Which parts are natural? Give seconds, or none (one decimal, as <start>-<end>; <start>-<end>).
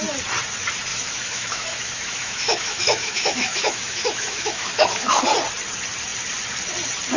0.0-0.9; 5.2-7.2